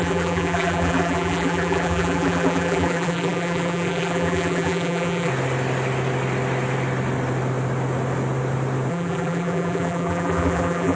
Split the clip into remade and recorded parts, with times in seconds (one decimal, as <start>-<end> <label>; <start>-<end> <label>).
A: 0.0-5.3 remade; 5.3-8.9 recorded; 8.9-11.0 remade